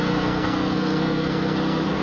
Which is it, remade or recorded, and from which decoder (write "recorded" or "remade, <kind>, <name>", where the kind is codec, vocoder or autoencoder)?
remade, codec, SNAC